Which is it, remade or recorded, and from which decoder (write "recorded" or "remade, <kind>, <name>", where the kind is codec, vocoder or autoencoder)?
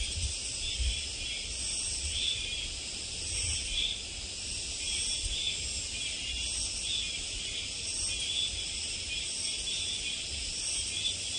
recorded